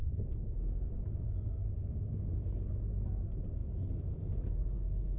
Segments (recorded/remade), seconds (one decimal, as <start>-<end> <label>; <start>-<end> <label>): 0.0-0.9 remade; 0.9-5.2 recorded